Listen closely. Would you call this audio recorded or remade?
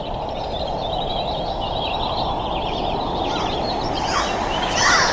remade